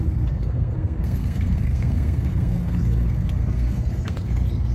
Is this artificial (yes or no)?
yes